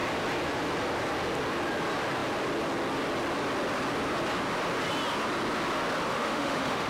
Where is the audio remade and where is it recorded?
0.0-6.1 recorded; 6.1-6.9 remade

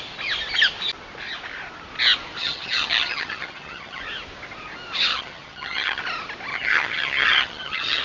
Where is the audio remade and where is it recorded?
0.0-2.4 recorded; 2.4-4.0 remade; 4.0-5.1 recorded; 5.1-6.0 remade; 6.0-6.5 recorded; 6.5-8.0 remade

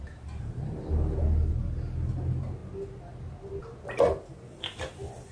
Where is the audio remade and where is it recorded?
0.0-5.3 recorded

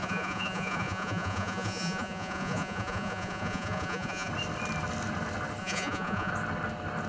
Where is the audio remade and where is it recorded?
0.0-4.3 remade; 4.3-5.6 recorded; 5.6-6.3 remade; 6.3-7.1 recorded

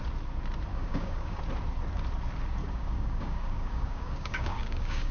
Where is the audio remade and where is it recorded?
0.0-0.7 recorded; 0.7-1.4 remade; 1.4-2.6 recorded; 2.6-5.1 remade

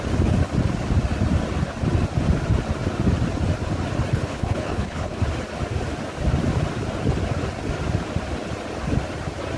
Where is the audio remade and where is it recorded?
0.0-4.1 recorded; 4.1-5.2 remade; 5.2-9.6 recorded

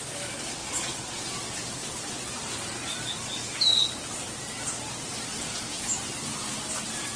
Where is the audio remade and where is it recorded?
0.0-0.6 recorded; 0.6-1.2 remade; 1.2-7.2 recorded

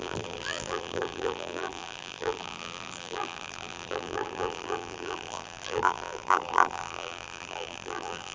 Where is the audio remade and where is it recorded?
0.0-8.3 remade